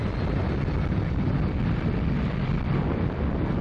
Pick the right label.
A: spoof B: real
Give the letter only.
A